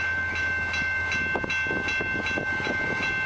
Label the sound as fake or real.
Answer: real